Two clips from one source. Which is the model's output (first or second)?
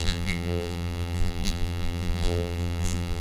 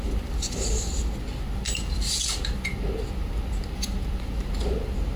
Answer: first